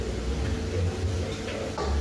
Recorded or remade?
recorded